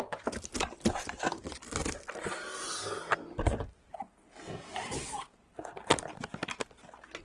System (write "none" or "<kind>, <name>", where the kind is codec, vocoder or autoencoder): none